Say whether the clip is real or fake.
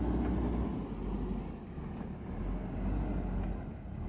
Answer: real